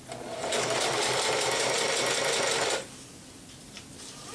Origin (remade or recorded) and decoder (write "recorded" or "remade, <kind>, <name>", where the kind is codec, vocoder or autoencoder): recorded